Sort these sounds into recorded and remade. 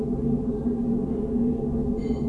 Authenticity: recorded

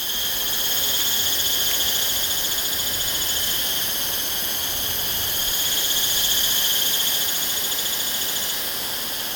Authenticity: recorded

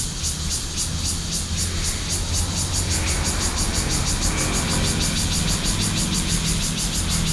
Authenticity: recorded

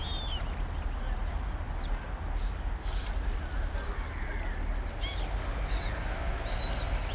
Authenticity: recorded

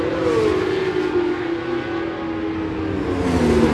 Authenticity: recorded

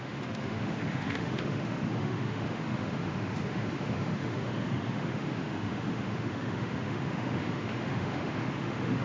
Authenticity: remade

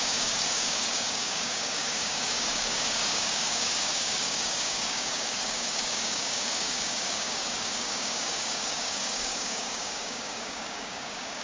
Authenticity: remade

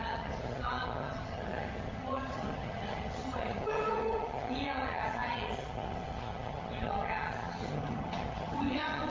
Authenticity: remade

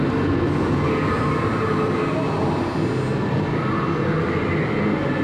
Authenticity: recorded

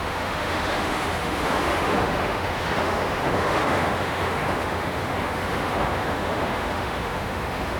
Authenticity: remade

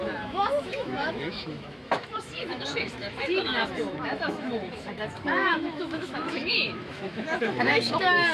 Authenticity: remade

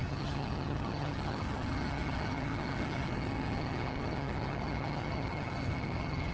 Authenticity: remade